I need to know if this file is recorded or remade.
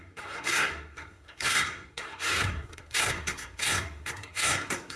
remade